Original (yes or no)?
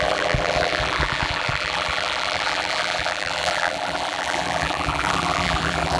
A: no